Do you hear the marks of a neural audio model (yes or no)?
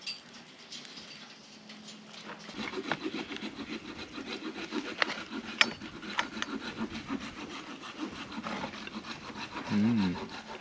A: no